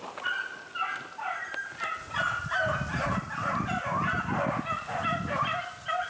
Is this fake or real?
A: real